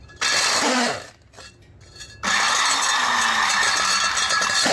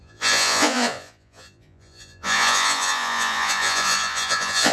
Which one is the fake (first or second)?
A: second